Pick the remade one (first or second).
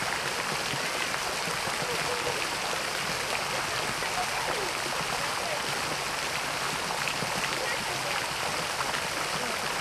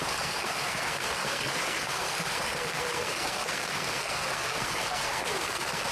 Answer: second